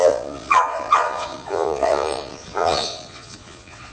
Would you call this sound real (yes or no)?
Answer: no